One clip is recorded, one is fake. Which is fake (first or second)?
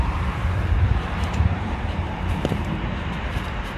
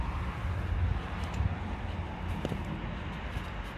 first